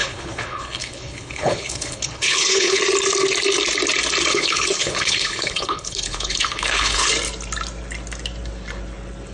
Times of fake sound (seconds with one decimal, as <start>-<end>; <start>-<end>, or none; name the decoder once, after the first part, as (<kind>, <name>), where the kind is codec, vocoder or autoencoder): 0.0-2.8 (codec, HILCodec); 4.3-7.1